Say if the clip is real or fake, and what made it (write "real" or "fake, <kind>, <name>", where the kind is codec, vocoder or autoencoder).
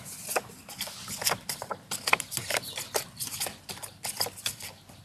real